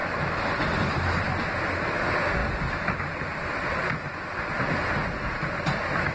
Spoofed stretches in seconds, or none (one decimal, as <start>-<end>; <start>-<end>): none

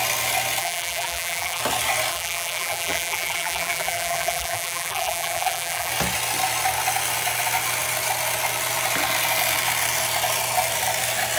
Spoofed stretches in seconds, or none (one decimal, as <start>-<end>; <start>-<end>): 0.6-1.6; 2.1-5.9

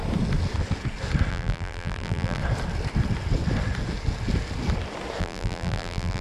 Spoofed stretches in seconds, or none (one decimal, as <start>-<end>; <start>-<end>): 1.3-2.4; 5.2-6.2

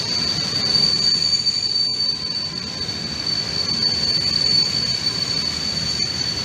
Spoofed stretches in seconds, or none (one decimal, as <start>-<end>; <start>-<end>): none

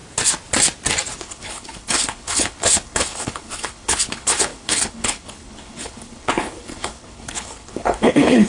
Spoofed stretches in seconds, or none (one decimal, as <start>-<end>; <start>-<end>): 1.2-8.5